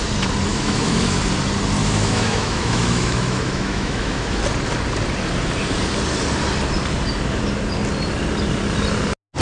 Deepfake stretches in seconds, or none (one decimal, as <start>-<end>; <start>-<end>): 0.5-1.2; 1.8-4.4